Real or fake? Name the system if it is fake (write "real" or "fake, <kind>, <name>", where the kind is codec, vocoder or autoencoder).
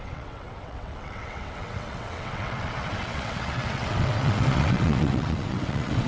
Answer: fake, vocoder, WaveNeXt